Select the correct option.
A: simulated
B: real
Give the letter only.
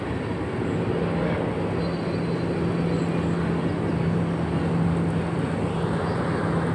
B